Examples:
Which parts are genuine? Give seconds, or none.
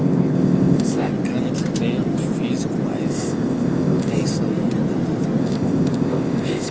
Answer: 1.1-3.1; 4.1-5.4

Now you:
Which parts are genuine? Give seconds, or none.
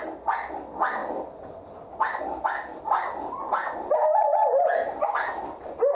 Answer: 0.0-5.9